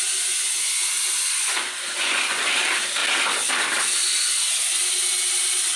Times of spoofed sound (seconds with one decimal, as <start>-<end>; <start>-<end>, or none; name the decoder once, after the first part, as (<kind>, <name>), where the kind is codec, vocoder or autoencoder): 0.0-2.4 (vocoder, Vocos)